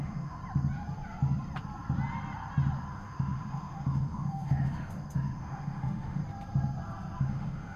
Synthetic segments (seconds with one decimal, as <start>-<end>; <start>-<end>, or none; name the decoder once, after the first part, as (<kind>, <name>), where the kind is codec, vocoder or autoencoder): 0.0-0.4 (autoencoder, DAC-VAE); 2.9-6.2; 7.2-7.8